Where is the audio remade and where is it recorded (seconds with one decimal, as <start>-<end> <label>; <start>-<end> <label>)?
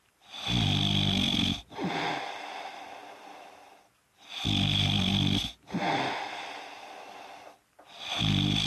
0.0-8.7 recorded